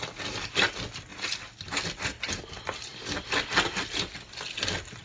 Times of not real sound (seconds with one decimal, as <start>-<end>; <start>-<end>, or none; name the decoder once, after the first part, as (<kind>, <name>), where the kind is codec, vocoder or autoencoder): none